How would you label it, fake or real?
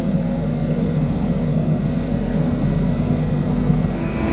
fake